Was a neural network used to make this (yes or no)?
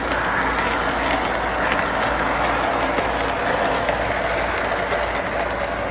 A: no